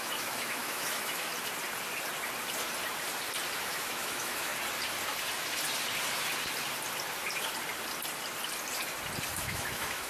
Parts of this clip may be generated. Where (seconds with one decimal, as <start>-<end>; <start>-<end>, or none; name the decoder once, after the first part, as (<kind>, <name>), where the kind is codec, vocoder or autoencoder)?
0.0-1.3 (autoencoder, DAC-VAE); 3.6-4.5; 9.3-10.1